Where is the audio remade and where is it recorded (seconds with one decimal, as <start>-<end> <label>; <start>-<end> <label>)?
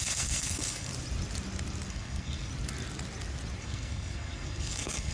0.0-0.9 remade; 0.9-1.9 recorded; 1.9-2.5 remade; 2.5-3.6 recorded; 3.6-5.1 remade